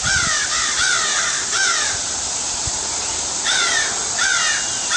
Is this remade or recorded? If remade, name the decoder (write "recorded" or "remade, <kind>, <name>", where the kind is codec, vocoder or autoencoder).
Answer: recorded